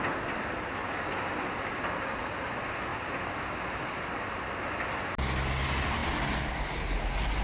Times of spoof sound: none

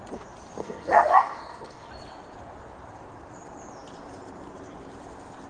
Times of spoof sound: 0.6-1.9